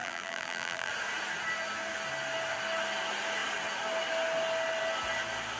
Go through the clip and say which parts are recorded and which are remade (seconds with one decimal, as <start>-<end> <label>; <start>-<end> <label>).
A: 0.0-0.9 remade; 0.9-5.6 recorded